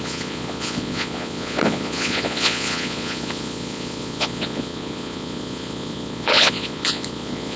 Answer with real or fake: fake